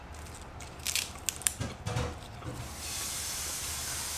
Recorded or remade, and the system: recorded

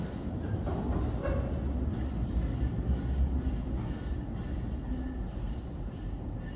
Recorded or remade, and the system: recorded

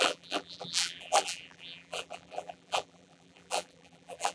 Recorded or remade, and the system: remade, vocoder, BigVGAN v2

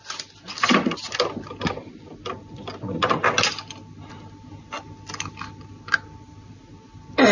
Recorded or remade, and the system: recorded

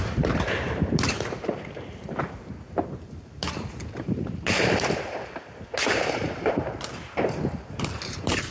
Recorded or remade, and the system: remade, vocoder, BigVGAN v2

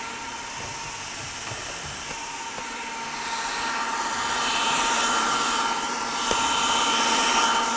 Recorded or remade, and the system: remade, vocoder, BigVGAN v2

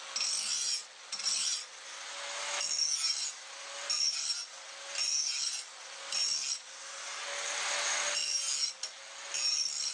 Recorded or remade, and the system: recorded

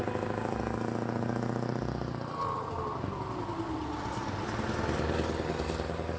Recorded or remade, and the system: recorded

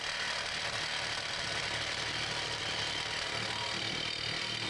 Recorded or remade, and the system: recorded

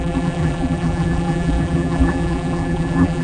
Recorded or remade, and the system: remade, vocoder, BigVGAN v2